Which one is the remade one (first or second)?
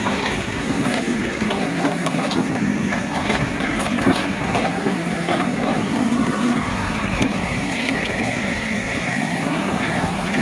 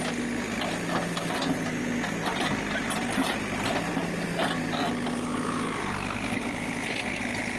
first